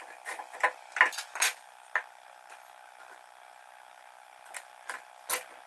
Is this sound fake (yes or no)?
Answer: no